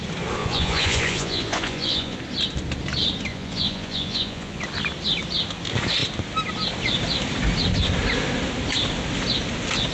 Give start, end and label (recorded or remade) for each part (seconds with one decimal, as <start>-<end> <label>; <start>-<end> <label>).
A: 0.0-0.4 recorded; 0.4-2.2 remade; 2.2-3.3 recorded; 3.3-4.6 remade; 4.6-9.9 recorded